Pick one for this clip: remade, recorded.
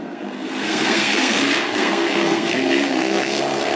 remade